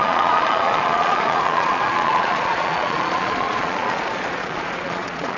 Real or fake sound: fake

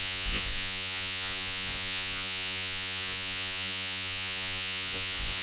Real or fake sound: fake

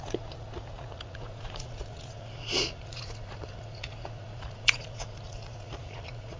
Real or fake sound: fake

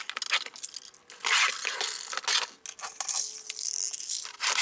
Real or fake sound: real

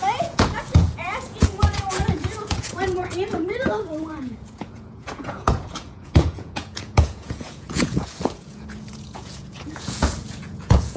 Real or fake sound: fake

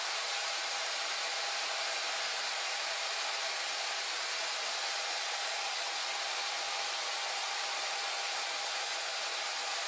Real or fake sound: real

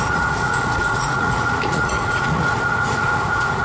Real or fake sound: fake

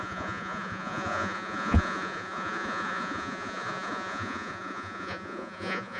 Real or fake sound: fake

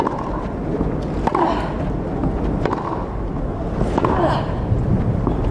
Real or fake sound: real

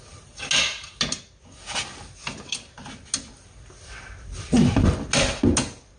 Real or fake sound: real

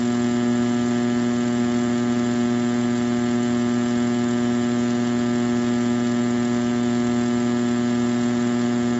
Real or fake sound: real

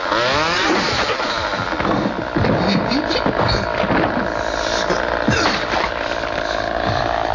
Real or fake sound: real